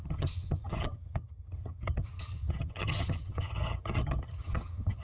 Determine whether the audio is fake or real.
fake